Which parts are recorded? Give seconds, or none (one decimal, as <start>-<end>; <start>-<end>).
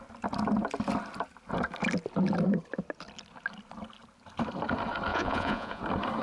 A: 0.0-5.1; 5.8-6.2